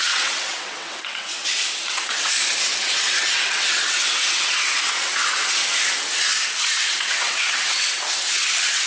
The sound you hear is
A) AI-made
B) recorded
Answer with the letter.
A